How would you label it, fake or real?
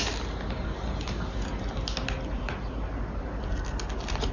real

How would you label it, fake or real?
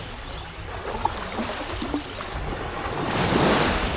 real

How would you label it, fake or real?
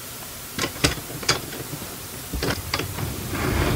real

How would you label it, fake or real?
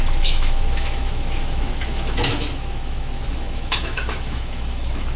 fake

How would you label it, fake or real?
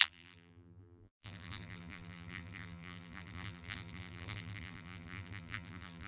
fake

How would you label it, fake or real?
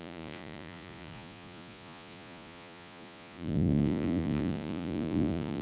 fake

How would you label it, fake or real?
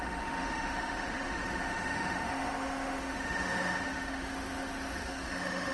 fake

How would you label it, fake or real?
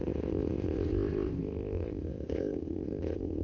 fake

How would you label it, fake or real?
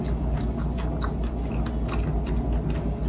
real